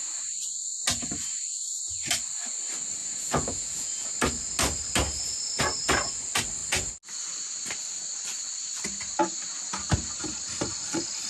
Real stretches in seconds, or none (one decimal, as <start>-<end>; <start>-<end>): 0.0-3.0; 4.1-11.3